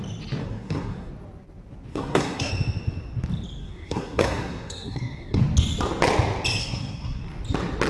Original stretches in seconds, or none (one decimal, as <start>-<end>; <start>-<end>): 0.0-0.4; 1.1-1.9; 2.5-3.6; 5.4-6.6; 7.2-7.9